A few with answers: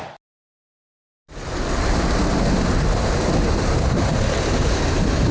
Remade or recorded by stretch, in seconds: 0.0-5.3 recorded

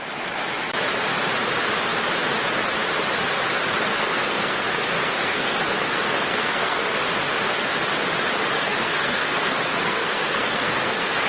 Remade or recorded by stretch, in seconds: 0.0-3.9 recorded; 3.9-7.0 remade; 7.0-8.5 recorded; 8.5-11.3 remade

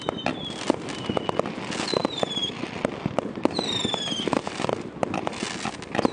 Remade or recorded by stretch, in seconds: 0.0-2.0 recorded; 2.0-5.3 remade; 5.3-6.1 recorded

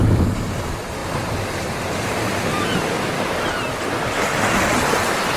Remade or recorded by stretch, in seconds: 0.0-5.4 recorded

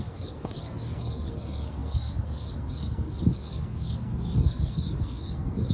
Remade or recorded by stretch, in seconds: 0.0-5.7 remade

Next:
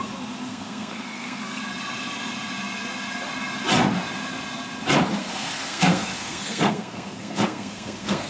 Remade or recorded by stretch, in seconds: 0.0-0.5 recorded; 0.5-1.6 remade; 1.6-5.2 recorded; 5.2-8.3 remade

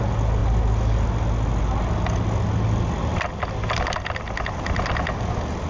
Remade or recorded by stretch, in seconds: 0.0-5.7 recorded

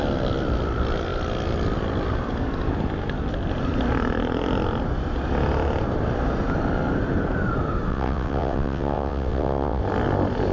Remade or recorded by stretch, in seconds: 0.0-7.9 recorded; 7.9-9.8 remade; 9.8-10.5 recorded